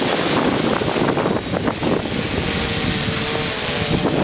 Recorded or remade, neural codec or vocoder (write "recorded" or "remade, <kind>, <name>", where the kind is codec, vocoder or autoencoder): recorded